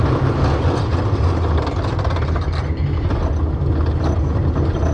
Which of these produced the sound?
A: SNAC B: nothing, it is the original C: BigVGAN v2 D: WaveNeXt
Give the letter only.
B